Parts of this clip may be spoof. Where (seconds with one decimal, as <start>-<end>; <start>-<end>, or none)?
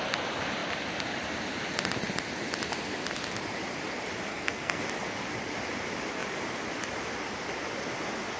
4.3-4.8